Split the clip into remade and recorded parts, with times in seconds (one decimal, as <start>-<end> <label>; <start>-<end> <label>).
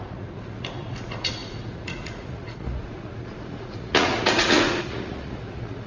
0.0-5.9 remade